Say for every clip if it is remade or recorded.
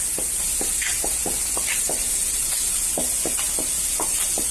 recorded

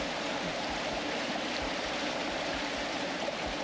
remade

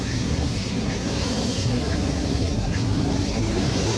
remade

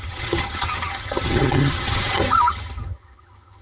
remade